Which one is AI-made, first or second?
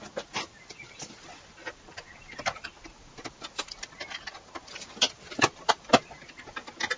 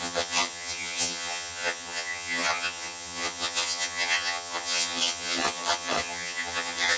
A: second